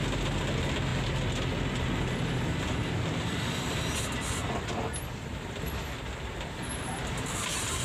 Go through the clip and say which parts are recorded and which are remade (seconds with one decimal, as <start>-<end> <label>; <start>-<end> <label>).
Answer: 0.0-7.8 recorded